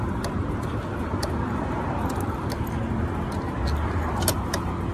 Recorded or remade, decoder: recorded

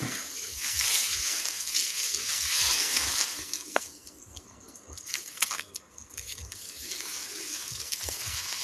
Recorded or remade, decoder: remade, codec, SNAC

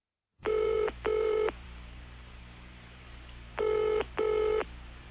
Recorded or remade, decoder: remade, vocoder, BigVGAN v2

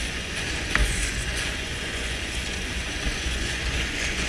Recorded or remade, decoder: remade, vocoder, Vocos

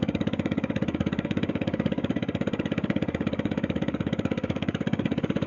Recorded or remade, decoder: remade, codec, DAC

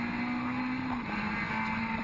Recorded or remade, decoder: recorded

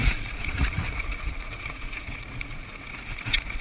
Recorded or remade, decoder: remade, vocoder, Vocos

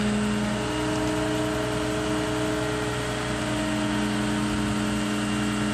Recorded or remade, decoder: recorded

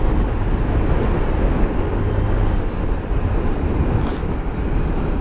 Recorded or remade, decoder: recorded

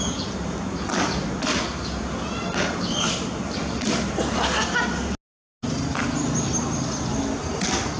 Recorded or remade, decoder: recorded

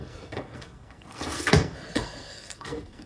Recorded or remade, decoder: remade, codec, SNAC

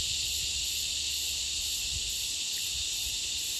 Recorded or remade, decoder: recorded